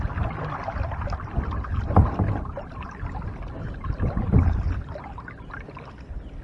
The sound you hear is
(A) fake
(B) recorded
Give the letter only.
B